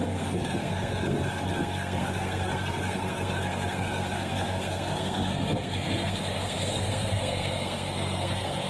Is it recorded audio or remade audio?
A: remade